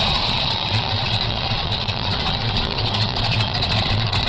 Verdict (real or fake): fake